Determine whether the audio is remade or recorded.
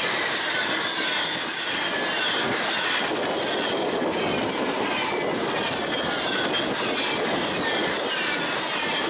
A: recorded